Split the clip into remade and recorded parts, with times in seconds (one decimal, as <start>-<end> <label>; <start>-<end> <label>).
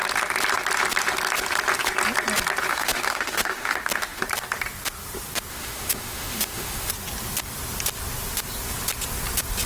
0.0-2.7 recorded; 2.7-4.2 remade; 4.2-5.5 recorded; 5.5-6.9 remade; 6.9-9.7 recorded